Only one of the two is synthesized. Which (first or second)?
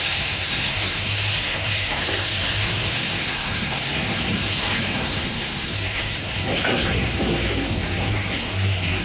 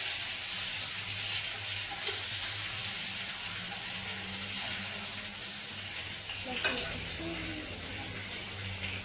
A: first